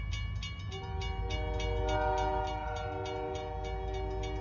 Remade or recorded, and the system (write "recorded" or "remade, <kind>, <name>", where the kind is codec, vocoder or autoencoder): recorded